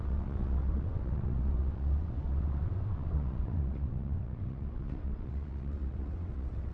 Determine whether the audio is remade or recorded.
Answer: remade